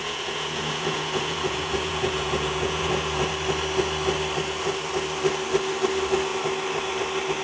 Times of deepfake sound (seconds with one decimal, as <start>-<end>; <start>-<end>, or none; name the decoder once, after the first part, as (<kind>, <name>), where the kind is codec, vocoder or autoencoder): 0.0-3.3 (vocoder, Vocos)